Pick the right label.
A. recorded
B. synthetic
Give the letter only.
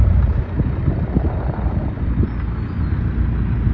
A